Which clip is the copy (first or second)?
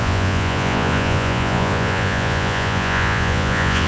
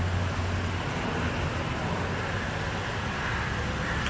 first